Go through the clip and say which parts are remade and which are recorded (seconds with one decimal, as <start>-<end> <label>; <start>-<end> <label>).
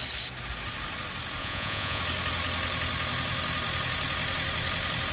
0.0-1.4 recorded; 1.4-2.0 remade; 2.0-5.1 recorded